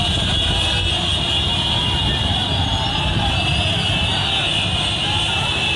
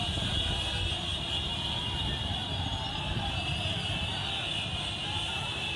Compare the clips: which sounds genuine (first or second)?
first